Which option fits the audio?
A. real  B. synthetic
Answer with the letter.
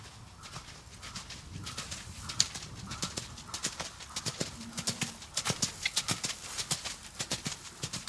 A